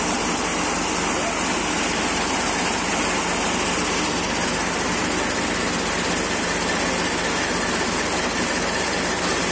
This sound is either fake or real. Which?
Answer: real